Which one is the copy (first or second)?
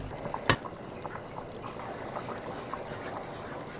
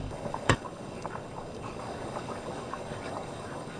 second